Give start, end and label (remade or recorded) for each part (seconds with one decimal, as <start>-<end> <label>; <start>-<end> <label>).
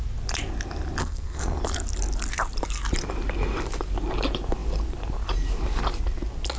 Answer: 0.0-1.0 recorded; 1.0-1.6 remade; 1.6-6.6 recorded